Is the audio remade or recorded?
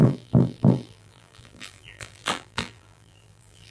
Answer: remade